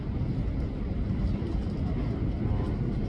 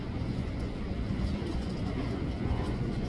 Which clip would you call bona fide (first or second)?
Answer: first